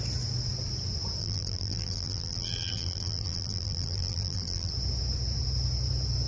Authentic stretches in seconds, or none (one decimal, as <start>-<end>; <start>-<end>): 0.0-1.2; 4.7-6.3